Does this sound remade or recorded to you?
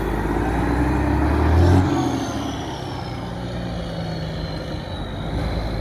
recorded